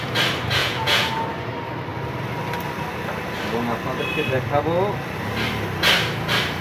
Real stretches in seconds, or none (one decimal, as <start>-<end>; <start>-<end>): 0.0-0.6; 1.1-6.6